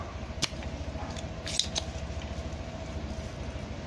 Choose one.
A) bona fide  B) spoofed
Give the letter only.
A